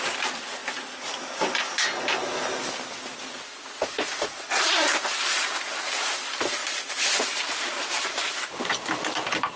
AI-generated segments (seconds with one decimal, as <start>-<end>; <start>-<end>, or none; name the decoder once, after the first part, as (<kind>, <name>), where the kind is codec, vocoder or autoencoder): 6.6-8.7 (vocoder, BigVGAN v2)